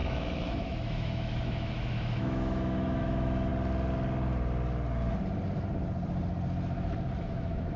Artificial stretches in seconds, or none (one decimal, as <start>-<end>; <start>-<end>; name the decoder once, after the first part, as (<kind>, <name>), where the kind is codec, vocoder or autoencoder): 0.0-3.5 (autoencoder, DAC-VAE); 7.2-7.8